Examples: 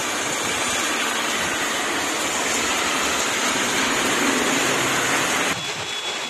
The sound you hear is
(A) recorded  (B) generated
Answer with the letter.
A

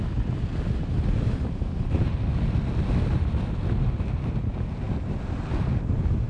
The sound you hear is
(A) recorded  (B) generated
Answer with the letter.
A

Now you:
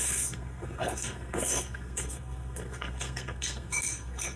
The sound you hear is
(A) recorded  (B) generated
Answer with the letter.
B